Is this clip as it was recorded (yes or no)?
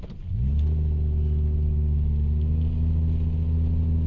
yes